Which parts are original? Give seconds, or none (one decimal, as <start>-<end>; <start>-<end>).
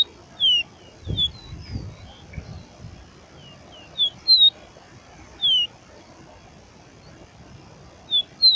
0.0-8.6